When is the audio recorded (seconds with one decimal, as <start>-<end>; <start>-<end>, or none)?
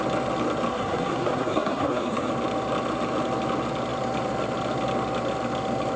0.0-0.7; 2.3-6.0